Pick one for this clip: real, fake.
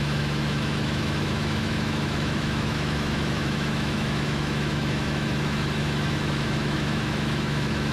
fake